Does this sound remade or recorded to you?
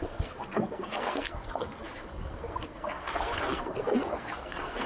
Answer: remade